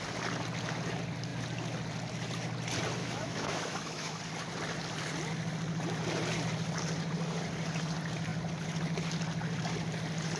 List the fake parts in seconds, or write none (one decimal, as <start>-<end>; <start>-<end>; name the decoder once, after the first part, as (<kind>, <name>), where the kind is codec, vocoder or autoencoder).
3.0-4.2 (autoencoder, DAC-VAE)